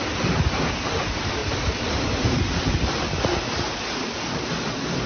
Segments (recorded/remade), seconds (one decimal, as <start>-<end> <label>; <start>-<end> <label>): 0.0-1.4 recorded; 1.4-4.5 remade; 4.5-5.1 recorded